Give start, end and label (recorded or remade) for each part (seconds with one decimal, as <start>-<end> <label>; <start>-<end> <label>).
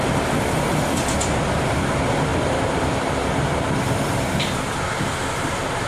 0.0-5.9 recorded